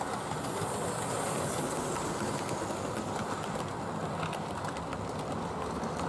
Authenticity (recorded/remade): recorded